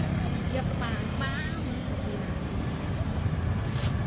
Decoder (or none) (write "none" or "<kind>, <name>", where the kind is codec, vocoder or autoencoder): vocoder, BigVGAN v2